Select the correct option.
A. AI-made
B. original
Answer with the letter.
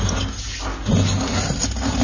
B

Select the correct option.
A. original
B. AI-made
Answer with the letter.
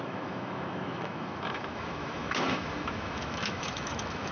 B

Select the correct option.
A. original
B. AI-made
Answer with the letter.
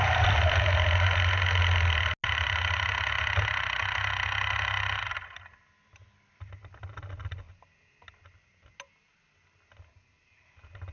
A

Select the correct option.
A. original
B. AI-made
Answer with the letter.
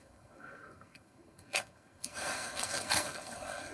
B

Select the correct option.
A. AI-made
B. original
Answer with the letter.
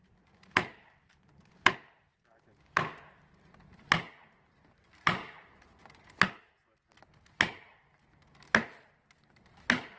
B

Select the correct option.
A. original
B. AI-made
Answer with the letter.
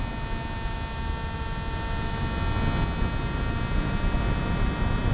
A